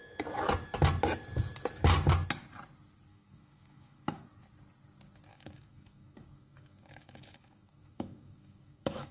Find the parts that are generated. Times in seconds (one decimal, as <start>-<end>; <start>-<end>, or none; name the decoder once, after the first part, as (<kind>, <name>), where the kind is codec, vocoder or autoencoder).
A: 3.1-4.2 (autoencoder, DAC-VAE); 5.3-9.1